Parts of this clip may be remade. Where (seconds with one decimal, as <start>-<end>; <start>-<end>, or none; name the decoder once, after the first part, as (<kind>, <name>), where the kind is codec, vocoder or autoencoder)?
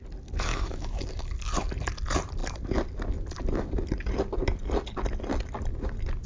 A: 0.5-1.0 (autoencoder, DAC-VAE)